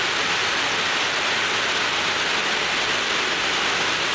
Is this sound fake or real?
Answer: real